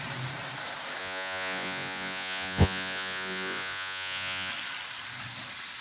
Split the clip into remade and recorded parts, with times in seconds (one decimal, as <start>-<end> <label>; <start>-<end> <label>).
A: 0.0-1.0 recorded; 1.0-4.5 remade; 4.5-5.8 recorded